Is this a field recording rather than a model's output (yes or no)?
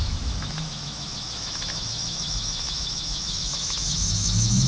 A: no